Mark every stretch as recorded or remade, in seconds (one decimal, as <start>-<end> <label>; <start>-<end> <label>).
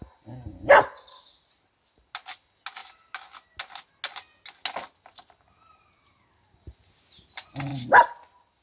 0.0-8.6 recorded